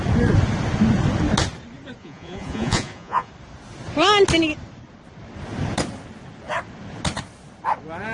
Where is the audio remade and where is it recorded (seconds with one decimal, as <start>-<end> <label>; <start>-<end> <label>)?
0.0-2.0 recorded; 2.0-3.3 remade; 3.3-8.1 recorded